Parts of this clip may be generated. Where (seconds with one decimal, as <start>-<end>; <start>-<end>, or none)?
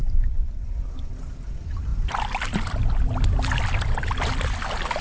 0.0-0.7; 1.9-5.0